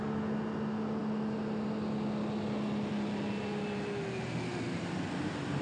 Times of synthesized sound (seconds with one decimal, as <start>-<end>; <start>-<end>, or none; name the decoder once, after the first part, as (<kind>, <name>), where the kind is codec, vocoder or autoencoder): 4.5-5.6 (vocoder, BigVGAN v2)